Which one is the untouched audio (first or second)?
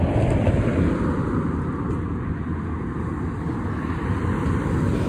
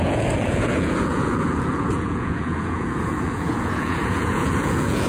first